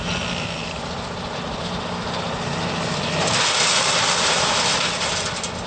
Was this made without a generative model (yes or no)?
yes